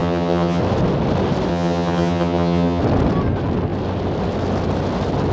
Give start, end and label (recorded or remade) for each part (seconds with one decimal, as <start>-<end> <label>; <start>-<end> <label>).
0.0-0.6 remade; 0.6-1.5 recorded; 1.5-2.8 remade; 2.8-5.3 recorded